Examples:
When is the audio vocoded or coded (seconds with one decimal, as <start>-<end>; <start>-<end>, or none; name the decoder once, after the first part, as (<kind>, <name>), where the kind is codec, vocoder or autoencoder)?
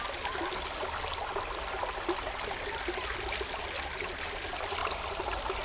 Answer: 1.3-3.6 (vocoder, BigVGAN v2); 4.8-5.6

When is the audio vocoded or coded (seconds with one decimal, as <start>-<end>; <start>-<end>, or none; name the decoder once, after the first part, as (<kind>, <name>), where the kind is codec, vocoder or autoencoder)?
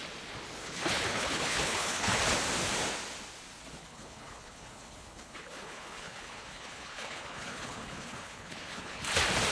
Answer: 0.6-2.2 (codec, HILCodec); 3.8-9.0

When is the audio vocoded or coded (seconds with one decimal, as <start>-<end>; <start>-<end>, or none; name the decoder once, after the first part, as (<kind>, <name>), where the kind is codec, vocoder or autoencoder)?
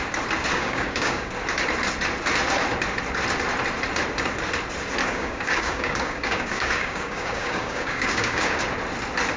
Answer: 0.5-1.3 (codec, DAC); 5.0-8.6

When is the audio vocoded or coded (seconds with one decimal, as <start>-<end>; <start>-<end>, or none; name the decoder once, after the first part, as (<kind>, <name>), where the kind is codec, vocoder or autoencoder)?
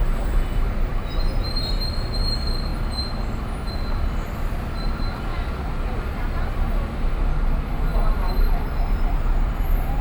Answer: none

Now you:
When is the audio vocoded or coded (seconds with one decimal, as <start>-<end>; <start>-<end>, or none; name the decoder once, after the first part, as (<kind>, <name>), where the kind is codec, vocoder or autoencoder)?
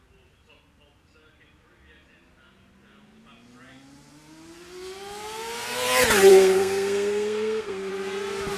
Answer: 6.3-7.9 (codec, SNAC)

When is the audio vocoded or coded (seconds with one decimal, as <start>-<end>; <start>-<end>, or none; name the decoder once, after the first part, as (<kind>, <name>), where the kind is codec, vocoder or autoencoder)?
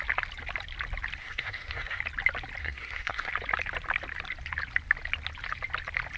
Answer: 1.2-2.0 (codec, SNAC); 2.6-3.3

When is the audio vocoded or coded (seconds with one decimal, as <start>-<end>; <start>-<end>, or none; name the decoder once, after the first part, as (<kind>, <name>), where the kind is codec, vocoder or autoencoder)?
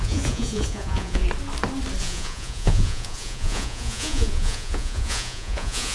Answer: 0.0-1.2 (vocoder, Vocos); 2.0-5.9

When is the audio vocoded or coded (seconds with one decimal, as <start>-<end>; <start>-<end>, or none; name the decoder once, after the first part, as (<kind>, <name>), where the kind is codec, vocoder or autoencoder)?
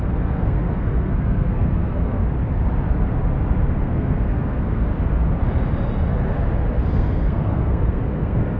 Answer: 0.0-2.2 (codec, SNAC); 3.8-4.9; 6.9-8.6